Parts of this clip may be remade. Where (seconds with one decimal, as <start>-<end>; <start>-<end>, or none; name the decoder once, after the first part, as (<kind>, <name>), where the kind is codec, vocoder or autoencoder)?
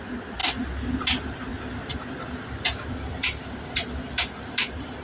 none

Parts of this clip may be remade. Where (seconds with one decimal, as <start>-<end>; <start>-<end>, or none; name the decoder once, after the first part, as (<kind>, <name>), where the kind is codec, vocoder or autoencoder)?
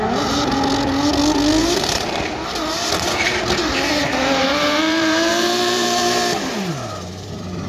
1.6-2.2 (vocoder, BigVGAN v2); 4.0-6.7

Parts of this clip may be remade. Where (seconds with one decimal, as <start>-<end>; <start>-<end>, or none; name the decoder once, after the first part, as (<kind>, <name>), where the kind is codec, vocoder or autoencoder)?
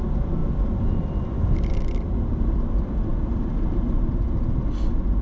0.4-1.7 (vocoder, BigVGAN v2)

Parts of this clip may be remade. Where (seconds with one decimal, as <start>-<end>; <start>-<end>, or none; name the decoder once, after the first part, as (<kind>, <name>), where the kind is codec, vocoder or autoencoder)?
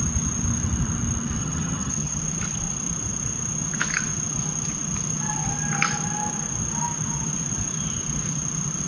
1.4-2.2 (vocoder, HiFi-GAN)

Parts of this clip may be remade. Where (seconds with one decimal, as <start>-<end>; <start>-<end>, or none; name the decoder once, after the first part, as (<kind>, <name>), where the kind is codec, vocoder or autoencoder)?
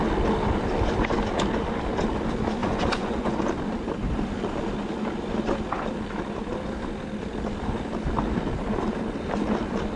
2.6-3.4 (vocoder, Vocos)